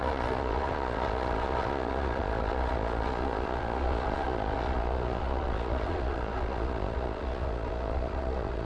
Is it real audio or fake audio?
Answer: fake